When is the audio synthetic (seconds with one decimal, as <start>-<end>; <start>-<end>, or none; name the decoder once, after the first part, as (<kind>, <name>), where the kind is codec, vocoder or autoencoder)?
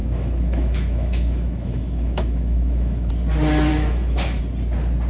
0.0-3.1 (autoencoder, DAC-VAE); 3.7-4.4